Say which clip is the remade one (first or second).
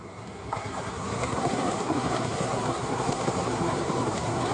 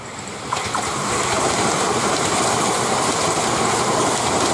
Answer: first